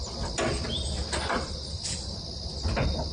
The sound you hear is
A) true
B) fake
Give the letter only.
A